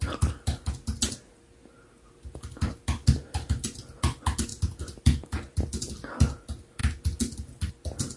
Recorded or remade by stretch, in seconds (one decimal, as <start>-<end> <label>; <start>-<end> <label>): 0.0-8.2 recorded